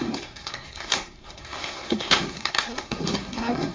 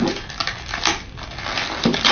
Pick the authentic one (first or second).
second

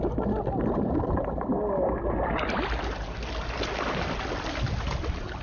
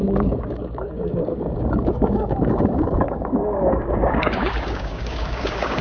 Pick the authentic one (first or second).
first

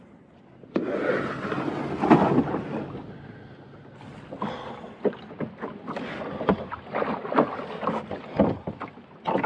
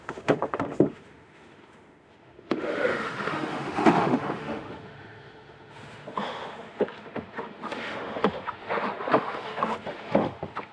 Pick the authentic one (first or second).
first